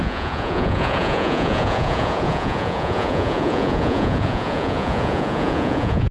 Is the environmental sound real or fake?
fake